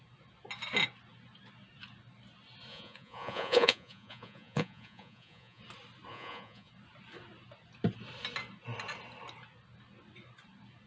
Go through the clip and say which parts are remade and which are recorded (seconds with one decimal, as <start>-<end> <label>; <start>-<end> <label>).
0.0-2.7 recorded; 2.7-5.6 remade; 5.6-6.1 recorded; 6.1-6.7 remade; 6.7-10.9 recorded